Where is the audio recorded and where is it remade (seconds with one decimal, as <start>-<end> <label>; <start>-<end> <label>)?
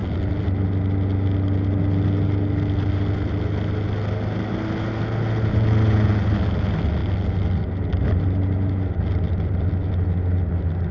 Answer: 0.0-10.9 recorded